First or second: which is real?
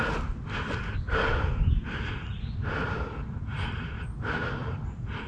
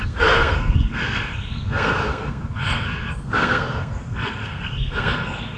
first